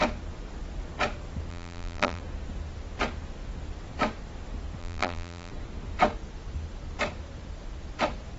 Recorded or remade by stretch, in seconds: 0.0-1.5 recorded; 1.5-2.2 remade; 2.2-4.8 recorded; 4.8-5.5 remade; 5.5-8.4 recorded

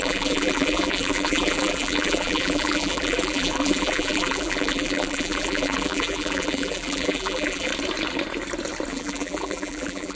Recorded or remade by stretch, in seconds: 0.0-7.7 remade; 7.7-8.9 recorded; 8.9-10.2 remade

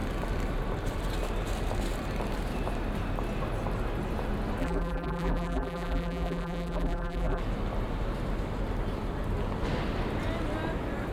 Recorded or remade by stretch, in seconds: 0.0-4.6 recorded; 4.6-7.4 remade; 7.4-11.1 recorded